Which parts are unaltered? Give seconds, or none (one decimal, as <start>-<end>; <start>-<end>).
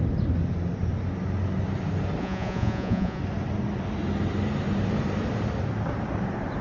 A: 0.0-2.2; 3.2-6.6